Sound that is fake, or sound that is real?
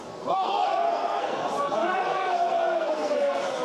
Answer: fake